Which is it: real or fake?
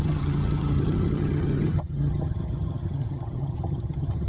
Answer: fake